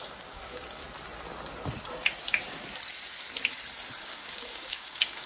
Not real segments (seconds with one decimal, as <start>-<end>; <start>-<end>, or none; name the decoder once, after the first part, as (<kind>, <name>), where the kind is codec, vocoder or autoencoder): 0.0-0.8 (codec, DAC); 4.0-5.3